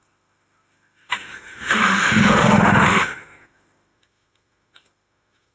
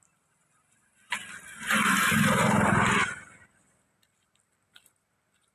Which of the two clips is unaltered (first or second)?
second